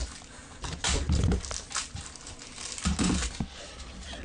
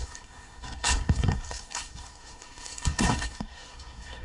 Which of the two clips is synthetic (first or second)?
second